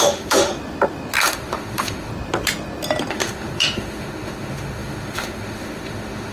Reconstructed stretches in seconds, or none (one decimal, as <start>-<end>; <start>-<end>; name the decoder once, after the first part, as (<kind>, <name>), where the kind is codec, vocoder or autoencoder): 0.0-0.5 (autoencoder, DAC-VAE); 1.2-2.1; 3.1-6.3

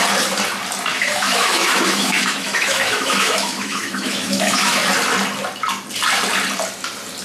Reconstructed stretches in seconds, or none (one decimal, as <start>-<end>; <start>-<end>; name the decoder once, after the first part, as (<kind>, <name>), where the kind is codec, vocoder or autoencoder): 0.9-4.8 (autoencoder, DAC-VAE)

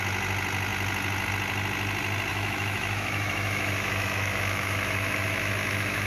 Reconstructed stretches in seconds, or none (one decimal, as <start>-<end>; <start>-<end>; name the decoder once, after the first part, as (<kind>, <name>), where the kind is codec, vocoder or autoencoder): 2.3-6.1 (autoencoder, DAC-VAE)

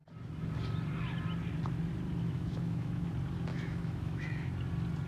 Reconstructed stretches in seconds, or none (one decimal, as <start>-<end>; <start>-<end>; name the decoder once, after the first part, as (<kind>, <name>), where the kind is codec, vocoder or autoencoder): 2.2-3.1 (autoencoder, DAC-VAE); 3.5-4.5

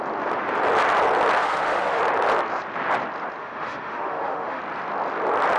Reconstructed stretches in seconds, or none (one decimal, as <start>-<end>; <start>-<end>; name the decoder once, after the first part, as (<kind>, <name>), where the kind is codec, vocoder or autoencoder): 1.4-2.0 (autoencoder, DAC-VAE); 3.4-4.6

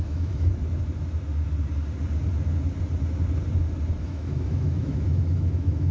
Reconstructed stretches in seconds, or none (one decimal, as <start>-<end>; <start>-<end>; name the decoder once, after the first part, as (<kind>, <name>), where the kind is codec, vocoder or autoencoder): 0.0-0.5 (autoencoder, DAC-VAE); 4.0-5.9

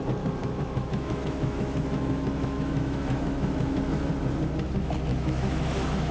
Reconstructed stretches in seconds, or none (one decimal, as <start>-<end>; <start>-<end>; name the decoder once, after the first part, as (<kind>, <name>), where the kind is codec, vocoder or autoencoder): 0.4-4.1 (autoencoder, DAC-VAE); 5.1-6.1

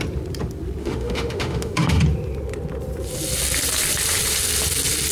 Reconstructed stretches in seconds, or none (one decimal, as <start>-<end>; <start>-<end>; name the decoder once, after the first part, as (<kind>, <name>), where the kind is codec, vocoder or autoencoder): 0.8-2.0 (autoencoder, DAC-VAE)